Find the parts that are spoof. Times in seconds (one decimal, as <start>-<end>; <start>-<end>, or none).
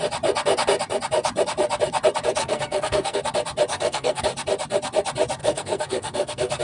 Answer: 2.4-3.2; 3.7-4.2; 5.4-6.6